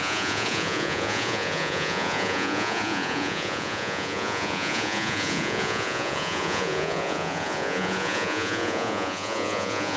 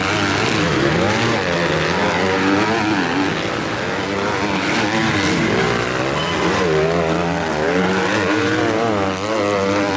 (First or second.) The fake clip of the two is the first